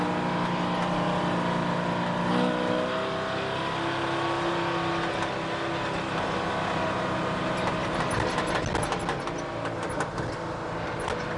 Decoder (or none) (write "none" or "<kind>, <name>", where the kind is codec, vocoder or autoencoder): none